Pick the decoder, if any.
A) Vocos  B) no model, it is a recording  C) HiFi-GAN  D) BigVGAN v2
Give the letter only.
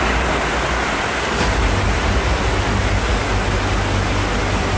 B